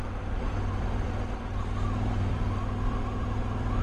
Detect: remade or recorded remade